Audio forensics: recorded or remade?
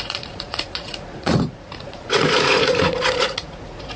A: remade